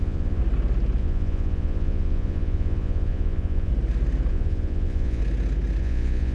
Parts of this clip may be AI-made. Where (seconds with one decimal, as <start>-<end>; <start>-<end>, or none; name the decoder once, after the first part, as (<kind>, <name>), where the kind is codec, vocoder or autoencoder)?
0.0-0.4 (vocoder, Vocos); 1.0-3.7; 4.3-5.2; 5.8-6.3